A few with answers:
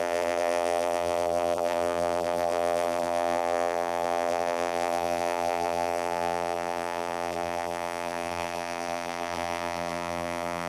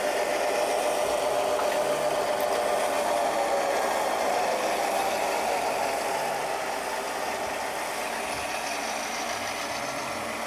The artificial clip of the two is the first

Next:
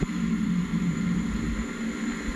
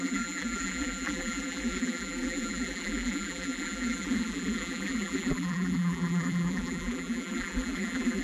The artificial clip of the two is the second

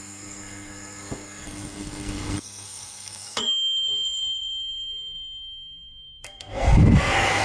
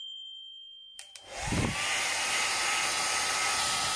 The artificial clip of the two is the first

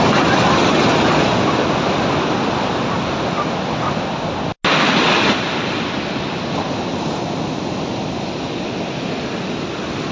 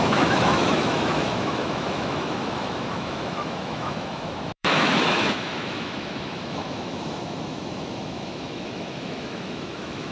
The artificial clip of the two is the second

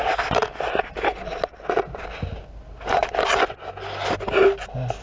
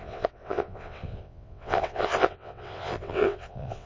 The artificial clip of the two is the second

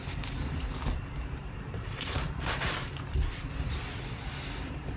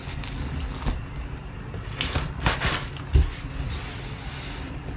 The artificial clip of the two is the first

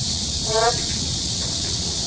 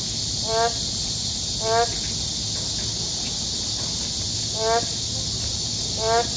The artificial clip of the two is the first